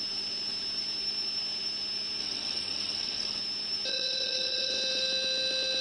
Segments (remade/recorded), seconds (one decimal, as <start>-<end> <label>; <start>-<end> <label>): 0.0-2.2 recorded; 2.2-3.4 remade; 3.4-3.9 recorded; 3.9-4.7 remade; 4.7-5.8 recorded